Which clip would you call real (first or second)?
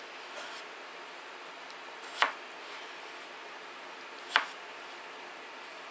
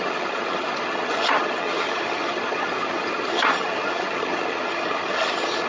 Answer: first